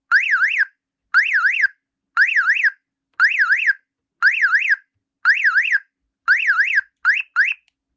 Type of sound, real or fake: real